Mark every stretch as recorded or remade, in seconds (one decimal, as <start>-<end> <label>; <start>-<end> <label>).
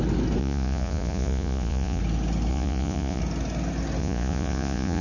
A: 0.0-0.4 recorded; 0.4-2.0 remade; 2.0-2.5 recorded; 2.5-3.2 remade; 3.2-4.0 recorded; 4.0-5.0 remade